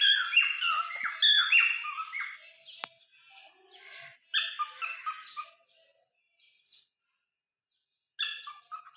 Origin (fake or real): real